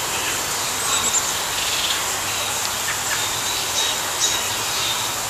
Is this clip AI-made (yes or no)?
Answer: no